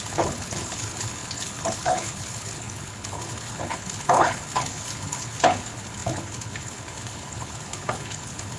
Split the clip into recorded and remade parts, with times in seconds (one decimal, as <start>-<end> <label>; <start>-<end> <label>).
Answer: 0.0-8.6 remade